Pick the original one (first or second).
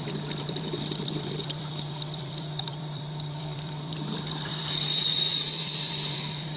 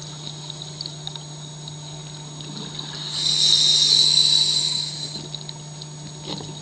second